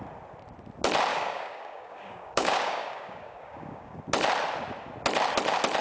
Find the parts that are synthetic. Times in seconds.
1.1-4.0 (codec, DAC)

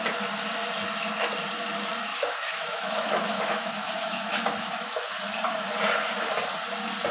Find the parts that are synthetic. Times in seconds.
2.1-5.1 (autoencoder, DAC-VAE)

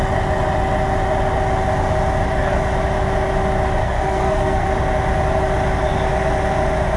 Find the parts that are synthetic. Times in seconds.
3.8-4.7 (codec, SNAC)